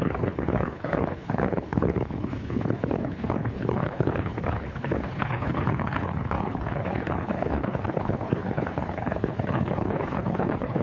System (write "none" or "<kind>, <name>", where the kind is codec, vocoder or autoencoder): codec, HILCodec